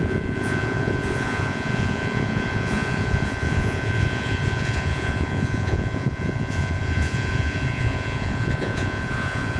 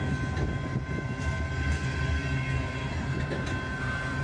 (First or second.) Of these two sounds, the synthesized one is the first